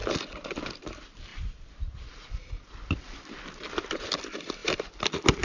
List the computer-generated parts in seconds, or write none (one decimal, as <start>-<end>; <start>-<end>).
0.0-5.4